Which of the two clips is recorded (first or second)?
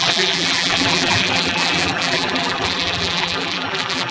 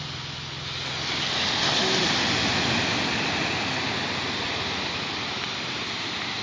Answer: second